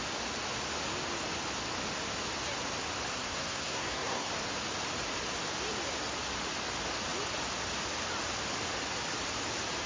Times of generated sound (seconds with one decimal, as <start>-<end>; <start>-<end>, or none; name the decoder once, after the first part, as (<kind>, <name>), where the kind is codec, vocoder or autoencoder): 3.1-4.3 (codec, SNAC)